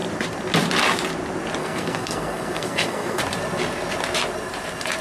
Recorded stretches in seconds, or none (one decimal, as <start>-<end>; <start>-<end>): 0.0-1.6; 3.2-5.0